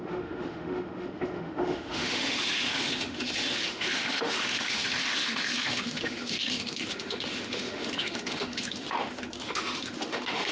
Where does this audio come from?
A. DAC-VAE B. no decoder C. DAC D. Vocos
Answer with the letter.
A